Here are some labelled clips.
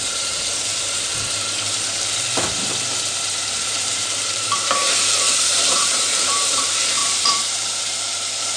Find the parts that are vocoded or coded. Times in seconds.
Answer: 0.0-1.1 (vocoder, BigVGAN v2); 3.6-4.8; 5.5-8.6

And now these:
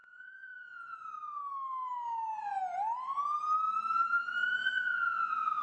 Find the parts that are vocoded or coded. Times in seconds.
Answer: 0.0-1.0 (vocoder, Vocos); 3.9-5.6

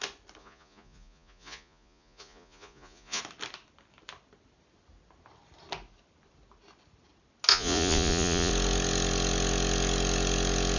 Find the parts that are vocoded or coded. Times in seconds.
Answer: 0.4-3.2 (vocoder, Vocos); 7.5-8.5

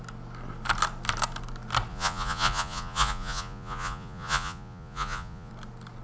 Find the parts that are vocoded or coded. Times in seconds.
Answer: 1.9-5.5 (vocoder, Vocos)

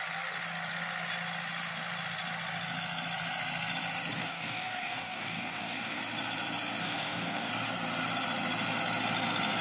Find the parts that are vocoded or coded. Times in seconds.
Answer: 4.2-6.0 (codec, DAC); 6.8-7.5

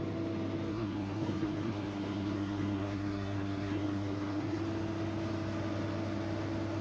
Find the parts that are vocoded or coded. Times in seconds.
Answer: 0.7-4.6 (codec, SNAC)